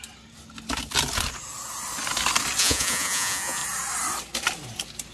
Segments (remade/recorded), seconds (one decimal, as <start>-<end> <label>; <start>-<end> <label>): 0.0-2.6 recorded; 2.6-3.6 remade; 3.6-5.1 recorded